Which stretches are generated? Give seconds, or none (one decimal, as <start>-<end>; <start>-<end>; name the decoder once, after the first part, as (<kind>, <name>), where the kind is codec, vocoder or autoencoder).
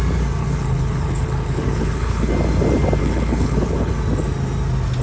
0.4-2.3 (codec, HILCodec); 3.0-3.9